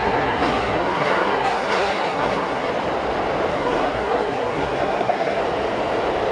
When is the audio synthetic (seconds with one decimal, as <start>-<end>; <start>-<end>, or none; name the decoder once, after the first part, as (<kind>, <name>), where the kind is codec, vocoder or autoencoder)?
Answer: 0.0-2.7 (codec, SNAC); 3.5-5.4